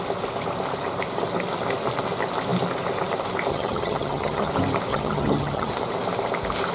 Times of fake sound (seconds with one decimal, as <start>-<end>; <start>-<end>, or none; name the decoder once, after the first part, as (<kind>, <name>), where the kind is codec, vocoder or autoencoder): 3.5-4.5 (vocoder, HiFi-GAN); 4.9-5.7